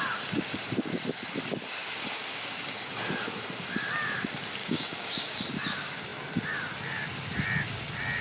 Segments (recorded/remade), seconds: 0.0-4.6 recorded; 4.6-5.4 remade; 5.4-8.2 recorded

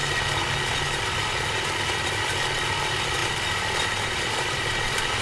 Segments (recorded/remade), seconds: 0.0-5.2 recorded

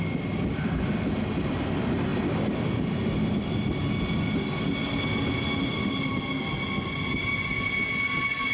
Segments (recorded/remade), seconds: 0.0-8.5 recorded

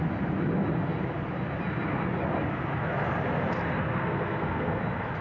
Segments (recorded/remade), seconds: 0.0-3.9 recorded; 3.9-4.8 remade; 4.8-5.2 recorded

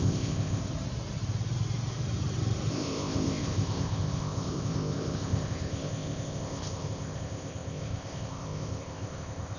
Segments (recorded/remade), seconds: 0.0-0.6 remade; 0.6-2.7 recorded; 2.7-9.6 remade

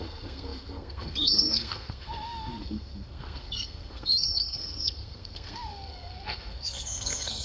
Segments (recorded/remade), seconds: 0.0-7.4 remade

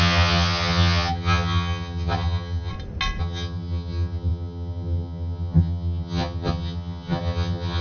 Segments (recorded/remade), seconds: 0.0-2.7 remade; 2.7-3.2 recorded; 3.2-7.8 remade